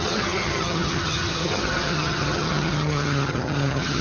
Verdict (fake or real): fake